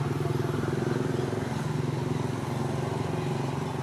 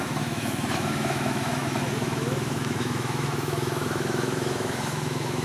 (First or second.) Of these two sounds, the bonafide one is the first